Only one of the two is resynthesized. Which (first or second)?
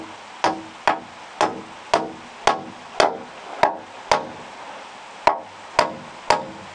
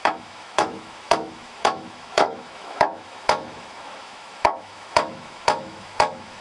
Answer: second